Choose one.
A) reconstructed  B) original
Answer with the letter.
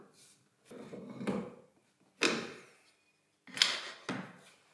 B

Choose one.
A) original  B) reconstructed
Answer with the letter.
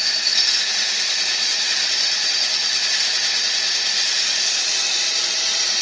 B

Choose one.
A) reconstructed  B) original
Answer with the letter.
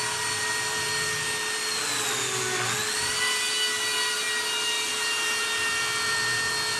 B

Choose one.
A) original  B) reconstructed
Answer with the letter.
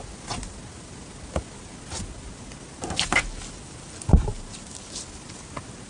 A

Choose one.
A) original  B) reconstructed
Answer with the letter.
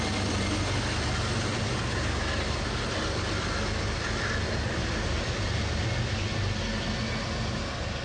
A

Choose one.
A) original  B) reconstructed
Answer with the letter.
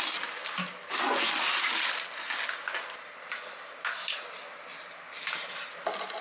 A